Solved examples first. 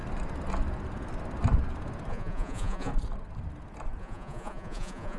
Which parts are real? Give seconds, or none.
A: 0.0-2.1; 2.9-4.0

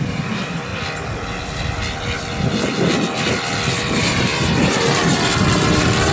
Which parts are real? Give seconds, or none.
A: 0.7-3.9

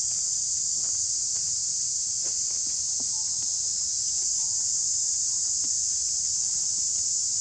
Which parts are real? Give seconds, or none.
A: 0.0-1.6; 2.6-3.9; 4.8-7.4

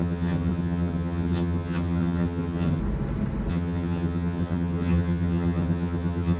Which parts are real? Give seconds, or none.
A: 2.8-3.5

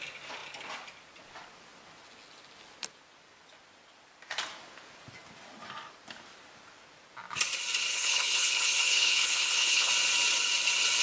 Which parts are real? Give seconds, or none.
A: 0.0-7.9; 9.9-11.0

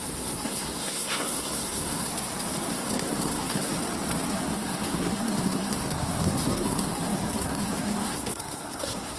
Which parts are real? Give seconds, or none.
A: 2.1-2.7; 3.7-4.3